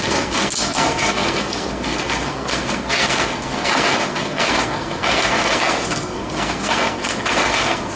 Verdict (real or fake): fake